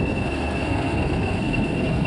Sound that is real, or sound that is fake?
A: fake